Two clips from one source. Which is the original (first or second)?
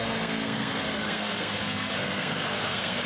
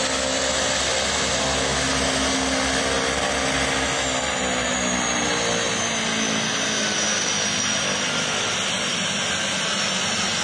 second